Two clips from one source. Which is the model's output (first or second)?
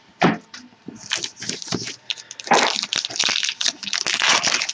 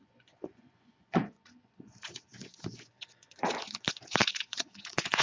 second